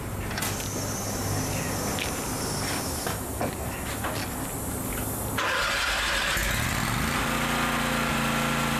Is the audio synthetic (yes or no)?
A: no